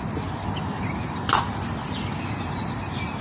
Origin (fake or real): real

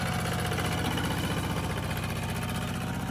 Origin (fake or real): real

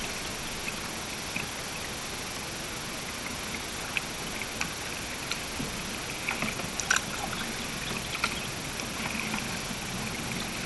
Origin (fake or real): real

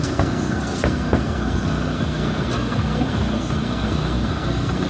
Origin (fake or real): fake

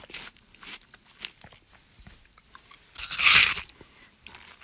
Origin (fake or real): real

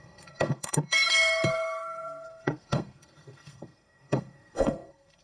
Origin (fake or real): fake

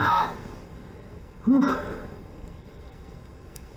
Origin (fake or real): fake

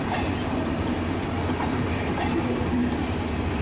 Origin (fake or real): real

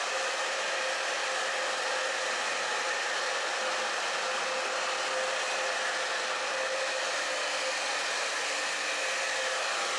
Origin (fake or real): real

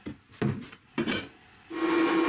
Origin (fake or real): real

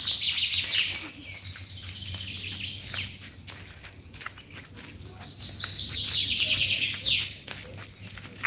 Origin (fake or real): real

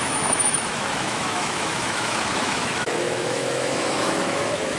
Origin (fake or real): fake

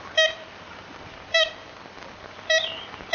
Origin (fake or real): fake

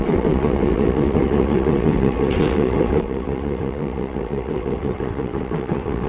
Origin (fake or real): fake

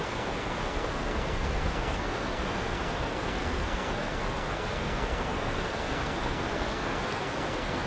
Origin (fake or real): fake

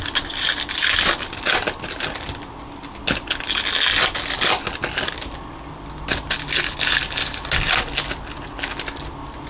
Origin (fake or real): real